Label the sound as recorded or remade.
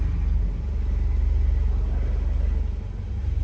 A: recorded